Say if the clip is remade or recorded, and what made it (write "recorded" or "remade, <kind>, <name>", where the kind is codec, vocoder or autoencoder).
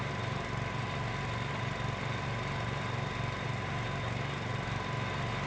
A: recorded